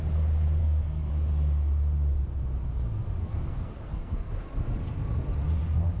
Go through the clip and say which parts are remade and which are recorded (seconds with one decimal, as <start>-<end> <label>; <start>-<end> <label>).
0.0-0.6 recorded; 0.6-1.1 remade; 1.1-3.2 recorded; 3.2-4.3 remade; 4.3-6.0 recorded